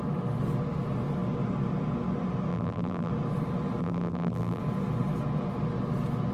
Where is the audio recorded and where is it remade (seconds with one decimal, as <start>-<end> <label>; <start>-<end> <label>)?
0.0-2.5 recorded; 2.5-3.1 remade; 3.1-3.8 recorded; 3.8-4.6 remade; 4.6-6.3 recorded